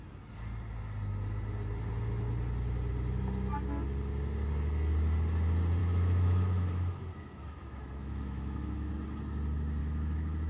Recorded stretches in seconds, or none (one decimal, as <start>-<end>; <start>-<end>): 0.0-5.8; 8.9-9.8

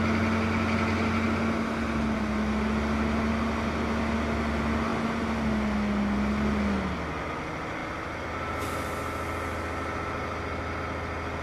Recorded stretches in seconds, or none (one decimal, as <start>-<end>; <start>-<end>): 0.0-11.4

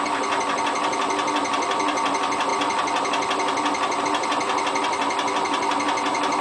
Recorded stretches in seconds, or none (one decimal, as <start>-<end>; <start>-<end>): 0.0-6.4

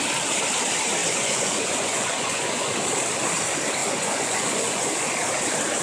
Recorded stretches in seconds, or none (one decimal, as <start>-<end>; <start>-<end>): 0.0-1.0; 2.7-3.8; 5.1-5.8

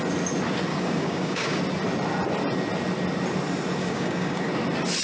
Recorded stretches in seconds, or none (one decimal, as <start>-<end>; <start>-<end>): 0.0-0.7; 1.6-3.8; 4.5-5.0